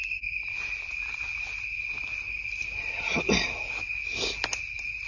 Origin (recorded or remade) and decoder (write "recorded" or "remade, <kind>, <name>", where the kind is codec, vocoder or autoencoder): recorded